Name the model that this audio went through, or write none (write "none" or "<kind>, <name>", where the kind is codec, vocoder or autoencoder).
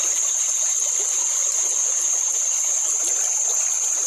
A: none